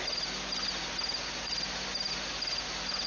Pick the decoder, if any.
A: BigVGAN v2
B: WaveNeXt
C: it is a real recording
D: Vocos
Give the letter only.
C